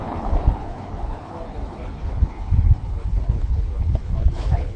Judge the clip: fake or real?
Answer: fake